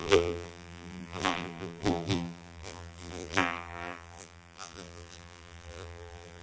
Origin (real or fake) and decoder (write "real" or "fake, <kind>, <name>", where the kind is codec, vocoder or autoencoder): fake, vocoder, BigVGAN v2